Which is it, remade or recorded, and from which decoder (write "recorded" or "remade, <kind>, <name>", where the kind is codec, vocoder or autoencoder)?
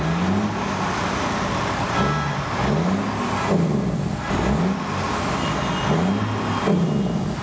recorded